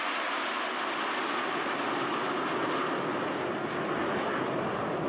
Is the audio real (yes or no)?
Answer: yes